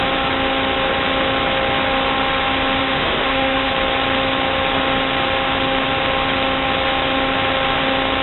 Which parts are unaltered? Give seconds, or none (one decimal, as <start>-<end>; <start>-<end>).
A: 0.0-2.8; 3.7-8.2